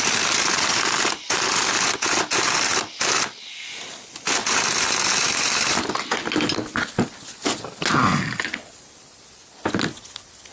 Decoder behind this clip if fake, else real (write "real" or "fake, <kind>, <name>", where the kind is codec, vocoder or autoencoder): real